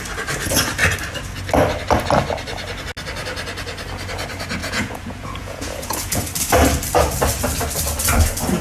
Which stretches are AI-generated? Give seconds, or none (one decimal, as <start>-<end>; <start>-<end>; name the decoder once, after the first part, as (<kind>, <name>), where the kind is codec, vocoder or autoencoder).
4.6-6.2 (vocoder, Vocos)